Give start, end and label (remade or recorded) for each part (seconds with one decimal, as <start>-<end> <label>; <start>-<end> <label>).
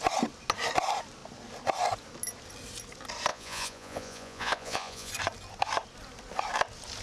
0.0-3.3 recorded; 3.3-5.1 remade; 5.1-7.0 recorded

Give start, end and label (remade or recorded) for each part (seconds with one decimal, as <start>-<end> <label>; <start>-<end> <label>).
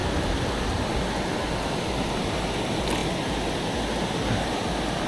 0.0-5.1 recorded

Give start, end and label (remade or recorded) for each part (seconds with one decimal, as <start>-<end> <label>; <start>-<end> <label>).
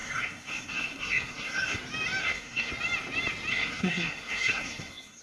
0.0-1.8 remade; 1.8-2.2 recorded; 2.2-2.7 remade; 2.7-3.5 recorded; 3.5-5.2 remade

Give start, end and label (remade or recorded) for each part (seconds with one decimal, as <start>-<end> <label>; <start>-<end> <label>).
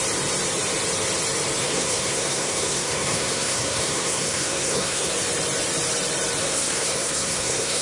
0.0-1.6 recorded; 1.6-5.1 remade; 5.1-6.4 recorded; 6.4-7.8 remade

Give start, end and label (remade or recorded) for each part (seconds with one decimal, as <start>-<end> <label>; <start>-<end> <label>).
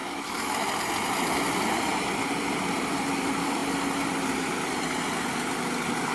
0.0-0.7 remade; 0.7-6.1 recorded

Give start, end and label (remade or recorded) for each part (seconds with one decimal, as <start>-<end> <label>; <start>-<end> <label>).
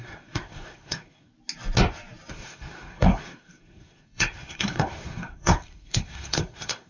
0.0-1.3 remade; 1.3-2.3 recorded; 2.3-6.9 remade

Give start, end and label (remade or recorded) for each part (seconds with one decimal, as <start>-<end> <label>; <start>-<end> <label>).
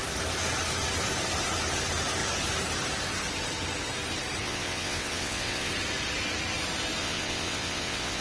0.0-4.4 recorded; 4.4-5.7 remade; 5.7-7.0 recorded; 7.0-8.2 remade